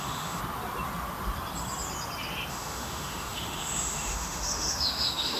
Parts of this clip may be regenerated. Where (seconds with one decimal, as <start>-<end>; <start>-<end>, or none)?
0.0-0.4; 2.5-5.4